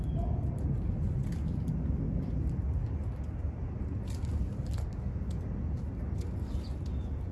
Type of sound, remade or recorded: recorded